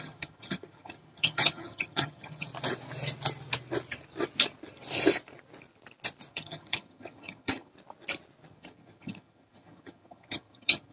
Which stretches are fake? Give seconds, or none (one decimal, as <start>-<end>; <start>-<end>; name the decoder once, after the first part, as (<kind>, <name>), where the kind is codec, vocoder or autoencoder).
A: 0.0-2.5 (vocoder, HiFi-GAN); 6.3-7.7; 8.5-10.9